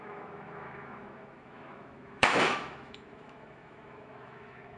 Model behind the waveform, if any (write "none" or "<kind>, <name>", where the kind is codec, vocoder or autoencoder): autoencoder, DAC-VAE